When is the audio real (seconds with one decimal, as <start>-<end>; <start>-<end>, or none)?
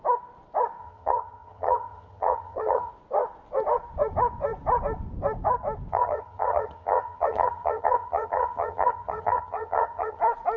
0.0-0.8; 2.9-5.9; 10.2-10.6